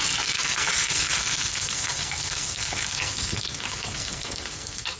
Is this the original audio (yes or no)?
no